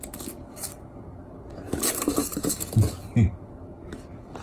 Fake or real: fake